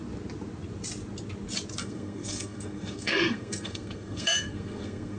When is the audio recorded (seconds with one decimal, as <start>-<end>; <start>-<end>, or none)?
0.0-1.8